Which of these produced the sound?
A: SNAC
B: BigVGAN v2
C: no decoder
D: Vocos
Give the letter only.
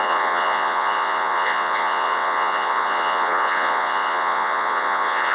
D